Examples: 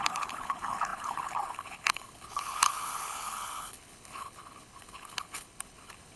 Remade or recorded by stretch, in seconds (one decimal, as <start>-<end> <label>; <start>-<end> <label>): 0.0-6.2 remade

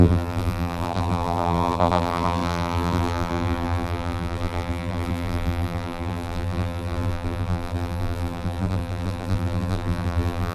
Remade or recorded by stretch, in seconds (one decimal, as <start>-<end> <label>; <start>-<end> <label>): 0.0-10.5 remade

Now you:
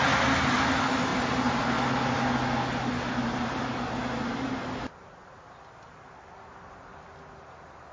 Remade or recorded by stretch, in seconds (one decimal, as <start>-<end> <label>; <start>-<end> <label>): 0.0-7.9 recorded